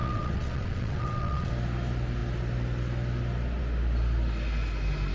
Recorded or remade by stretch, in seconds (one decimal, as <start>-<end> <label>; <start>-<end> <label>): 0.0-1.5 remade; 1.5-5.1 recorded